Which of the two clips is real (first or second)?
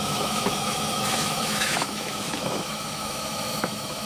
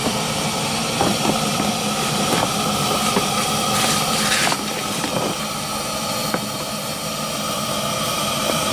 second